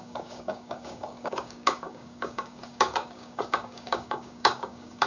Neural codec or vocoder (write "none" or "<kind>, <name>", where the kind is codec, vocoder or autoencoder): codec, DAC